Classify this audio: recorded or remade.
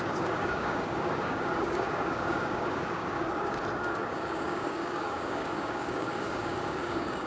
remade